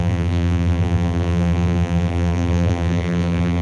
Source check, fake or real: fake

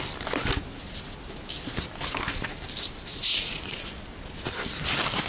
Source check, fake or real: fake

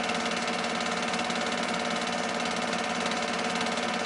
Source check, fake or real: real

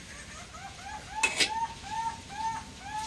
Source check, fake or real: real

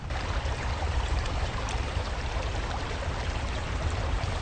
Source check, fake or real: fake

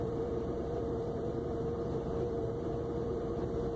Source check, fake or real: fake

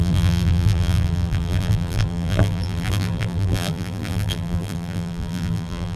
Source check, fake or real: fake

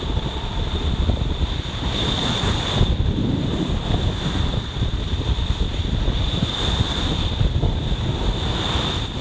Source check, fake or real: fake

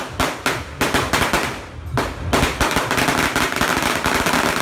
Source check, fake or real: real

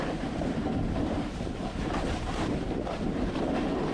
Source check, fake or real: fake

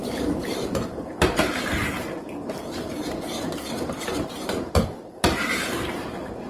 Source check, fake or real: fake